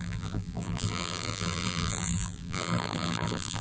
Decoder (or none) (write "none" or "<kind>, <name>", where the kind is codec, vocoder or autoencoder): vocoder, BigVGAN v2